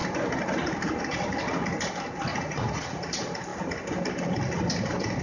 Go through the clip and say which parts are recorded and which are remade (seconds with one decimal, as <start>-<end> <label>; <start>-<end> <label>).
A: 0.0-2.3 recorded; 2.3-3.1 remade; 3.1-5.2 recorded